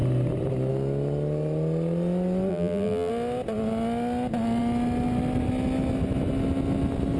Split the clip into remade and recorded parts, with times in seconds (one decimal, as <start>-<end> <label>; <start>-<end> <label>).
0.0-2.5 recorded; 2.5-3.1 remade; 3.1-7.2 recorded